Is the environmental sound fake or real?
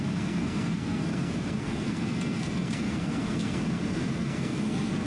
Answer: fake